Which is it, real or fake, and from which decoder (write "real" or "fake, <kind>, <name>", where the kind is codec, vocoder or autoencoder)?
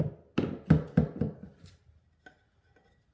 real